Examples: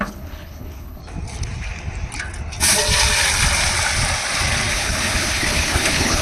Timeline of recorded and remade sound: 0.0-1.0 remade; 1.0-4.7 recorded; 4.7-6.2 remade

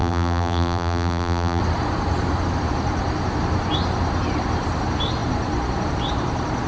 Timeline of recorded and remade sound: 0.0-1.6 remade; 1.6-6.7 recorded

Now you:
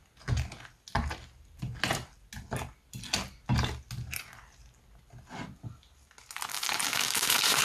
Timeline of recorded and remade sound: 0.0-6.5 recorded; 6.5-7.6 remade

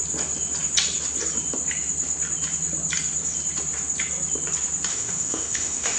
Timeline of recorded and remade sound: 0.0-4.9 recorded; 4.9-6.0 remade